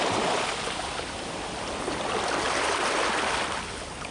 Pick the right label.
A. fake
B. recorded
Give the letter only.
B